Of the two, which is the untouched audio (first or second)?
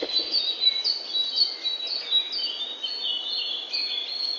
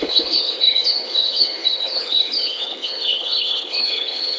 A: first